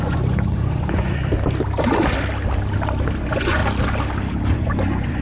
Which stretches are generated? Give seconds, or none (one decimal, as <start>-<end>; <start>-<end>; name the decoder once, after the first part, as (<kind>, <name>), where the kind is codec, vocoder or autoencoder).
0.0-1.2 (vocoder, Vocos); 3.2-3.6; 4.3-5.2